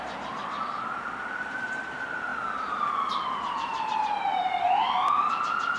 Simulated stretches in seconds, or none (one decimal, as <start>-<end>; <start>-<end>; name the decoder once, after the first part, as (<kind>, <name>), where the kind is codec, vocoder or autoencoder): 0.0-5.8 (vocoder, BigVGAN v2)